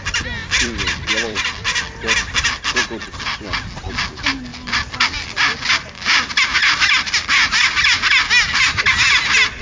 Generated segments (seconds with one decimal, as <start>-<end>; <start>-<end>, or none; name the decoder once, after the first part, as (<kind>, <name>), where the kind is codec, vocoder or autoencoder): 0.4-1.8 (vocoder, BigVGAN v2); 4.5-5.3; 6.6-8.3